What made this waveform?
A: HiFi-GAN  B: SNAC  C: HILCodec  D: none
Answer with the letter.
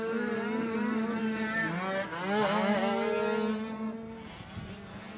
D